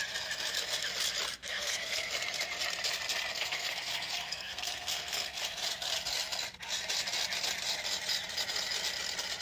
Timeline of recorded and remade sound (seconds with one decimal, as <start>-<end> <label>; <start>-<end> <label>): 0.0-1.4 recorded; 1.4-2.1 remade; 2.1-3.3 recorded; 3.3-5.4 remade; 5.4-9.4 recorded